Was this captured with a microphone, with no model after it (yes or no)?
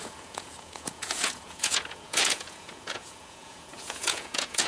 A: no